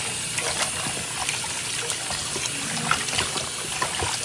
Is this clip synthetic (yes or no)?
no